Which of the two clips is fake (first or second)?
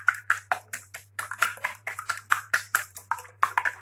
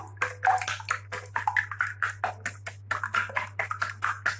first